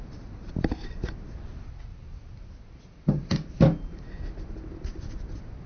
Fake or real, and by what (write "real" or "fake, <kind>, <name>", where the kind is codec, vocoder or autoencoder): real